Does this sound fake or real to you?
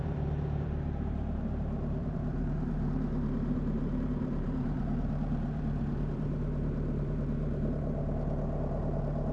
fake